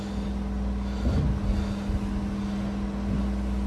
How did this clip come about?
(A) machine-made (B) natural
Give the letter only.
B